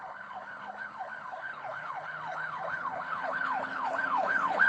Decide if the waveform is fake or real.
fake